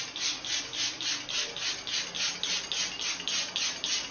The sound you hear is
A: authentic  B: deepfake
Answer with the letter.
A